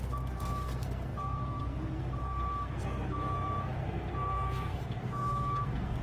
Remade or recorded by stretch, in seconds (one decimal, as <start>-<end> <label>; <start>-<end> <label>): 0.0-6.0 remade